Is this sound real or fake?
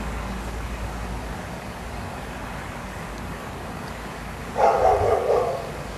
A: fake